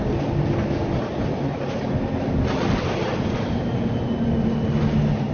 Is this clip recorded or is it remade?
recorded